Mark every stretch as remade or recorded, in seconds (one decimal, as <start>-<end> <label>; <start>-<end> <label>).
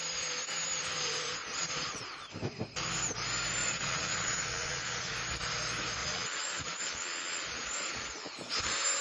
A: 0.0-1.4 recorded; 1.4-2.2 remade; 2.2-3.6 recorded; 3.6-5.1 remade; 5.1-6.0 recorded; 6.0-8.6 remade; 8.6-9.0 recorded